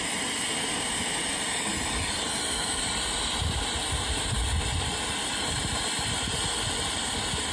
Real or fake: real